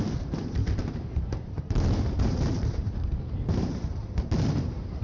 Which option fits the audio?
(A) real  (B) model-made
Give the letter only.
B